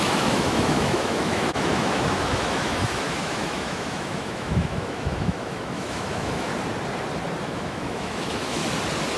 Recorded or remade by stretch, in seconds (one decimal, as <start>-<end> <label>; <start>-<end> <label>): 0.0-6.5 remade; 6.5-7.4 recorded; 7.4-8.6 remade; 8.6-9.2 recorded